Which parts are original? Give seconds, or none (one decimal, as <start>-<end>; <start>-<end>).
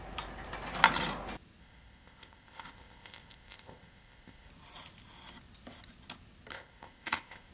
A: 0.0-1.6; 4.5-6.5